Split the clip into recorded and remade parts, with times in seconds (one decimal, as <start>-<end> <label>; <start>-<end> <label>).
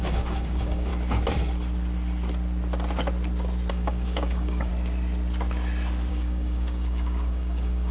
0.0-0.9 remade; 0.9-3.7 recorded; 3.7-4.7 remade; 4.7-6.1 recorded; 6.1-7.9 remade